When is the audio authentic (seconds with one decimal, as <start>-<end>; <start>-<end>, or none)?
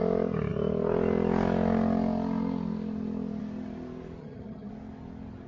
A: 0.0-4.2; 4.7-5.5